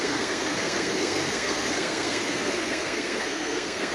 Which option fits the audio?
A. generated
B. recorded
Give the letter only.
A